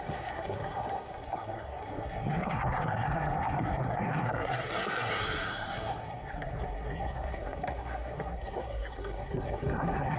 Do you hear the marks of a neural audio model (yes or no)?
yes